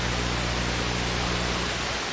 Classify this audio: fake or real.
real